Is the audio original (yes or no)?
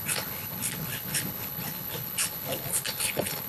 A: no